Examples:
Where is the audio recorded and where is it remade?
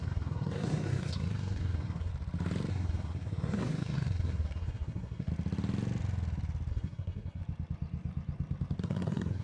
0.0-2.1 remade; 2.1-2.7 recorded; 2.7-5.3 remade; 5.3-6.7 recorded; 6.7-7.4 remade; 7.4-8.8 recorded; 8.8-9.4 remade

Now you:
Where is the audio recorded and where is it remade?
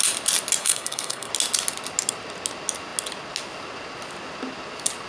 0.0-0.6 recorded; 0.6-1.3 remade; 1.3-5.1 recorded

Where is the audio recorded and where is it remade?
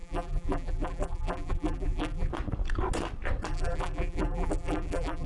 0.0-2.3 remade; 2.3-3.5 recorded; 3.5-5.3 remade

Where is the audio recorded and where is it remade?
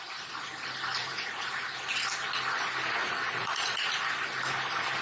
0.0-1.0 recorded; 1.0-1.5 remade; 1.5-3.0 recorded; 3.0-4.0 remade; 4.0-5.0 recorded